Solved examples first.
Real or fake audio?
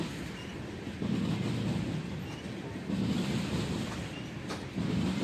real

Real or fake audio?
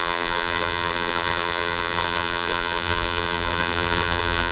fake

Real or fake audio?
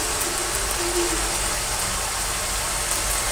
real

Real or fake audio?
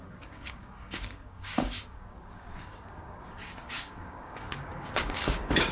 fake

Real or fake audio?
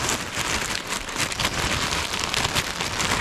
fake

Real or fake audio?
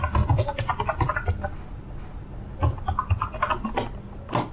real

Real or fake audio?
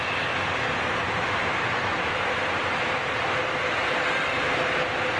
real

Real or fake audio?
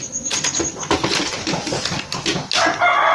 real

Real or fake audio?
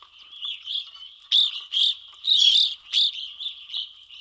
real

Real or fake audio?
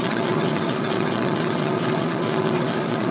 fake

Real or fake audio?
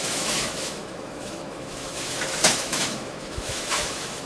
fake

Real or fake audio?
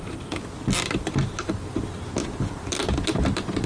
real